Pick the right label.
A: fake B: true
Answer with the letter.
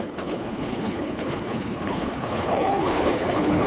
A